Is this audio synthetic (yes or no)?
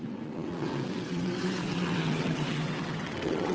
yes